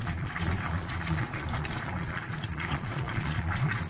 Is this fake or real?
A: fake